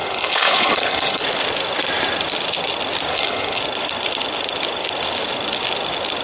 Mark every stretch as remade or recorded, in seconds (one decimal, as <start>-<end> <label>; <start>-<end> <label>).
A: 0.0-1.2 remade; 1.2-3.1 recorded; 3.1-3.6 remade; 3.6-6.2 recorded

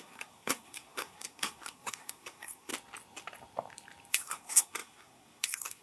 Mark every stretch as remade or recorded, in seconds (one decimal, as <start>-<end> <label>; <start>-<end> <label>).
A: 0.0-2.7 remade; 2.7-4.1 recorded; 4.1-5.8 remade

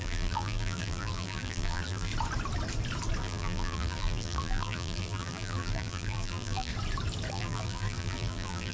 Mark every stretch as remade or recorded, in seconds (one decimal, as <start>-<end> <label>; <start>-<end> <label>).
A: 0.0-2.1 remade; 2.1-3.2 recorded; 3.2-6.7 remade; 6.7-7.3 recorded; 7.3-8.7 remade

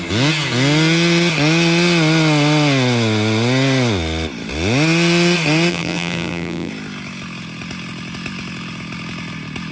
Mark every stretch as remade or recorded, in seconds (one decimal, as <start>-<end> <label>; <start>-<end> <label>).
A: 0.0-5.7 recorded; 5.7-6.7 remade; 6.7-9.7 recorded

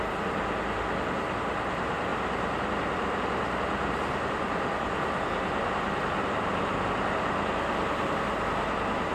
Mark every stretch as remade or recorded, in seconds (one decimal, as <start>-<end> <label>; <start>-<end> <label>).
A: 0.0-9.1 recorded

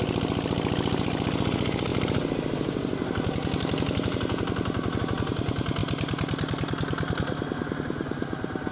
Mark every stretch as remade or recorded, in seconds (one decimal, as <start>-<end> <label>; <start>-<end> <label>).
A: 0.0-8.7 recorded

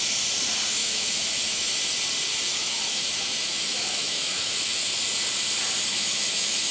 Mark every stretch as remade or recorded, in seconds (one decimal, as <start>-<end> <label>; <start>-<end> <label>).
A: 0.0-0.8 recorded; 0.8-1.8 remade; 1.8-2.5 recorded; 2.5-4.9 remade; 4.9-5.9 recorded; 5.9-6.7 remade

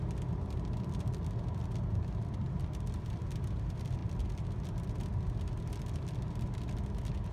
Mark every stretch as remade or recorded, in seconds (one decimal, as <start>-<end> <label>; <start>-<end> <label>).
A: 0.0-7.3 recorded